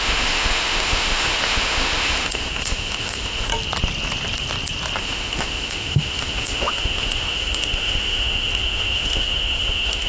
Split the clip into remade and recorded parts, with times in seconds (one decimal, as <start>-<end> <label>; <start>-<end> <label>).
0.0-3.5 remade; 3.5-5.0 recorded; 5.0-10.1 remade